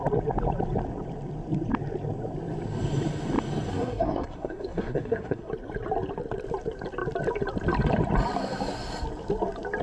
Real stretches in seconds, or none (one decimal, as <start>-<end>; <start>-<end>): 0.0-3.7; 5.5-9.8